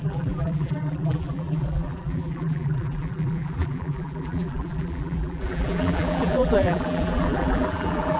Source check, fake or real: fake